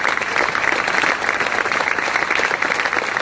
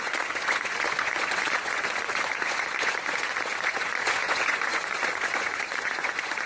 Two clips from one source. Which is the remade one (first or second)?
second